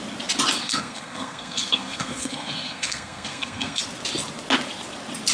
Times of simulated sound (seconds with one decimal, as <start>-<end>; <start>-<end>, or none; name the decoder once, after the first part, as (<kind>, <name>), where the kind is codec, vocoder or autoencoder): 0.6-3.8 (codec, SNAC)